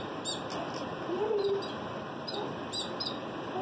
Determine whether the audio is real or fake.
real